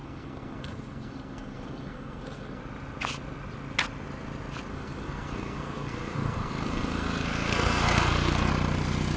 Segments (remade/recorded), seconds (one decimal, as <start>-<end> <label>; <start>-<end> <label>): 0.0-2.6 remade; 2.6-4.7 recorded; 4.7-8.5 remade; 8.5-9.2 recorded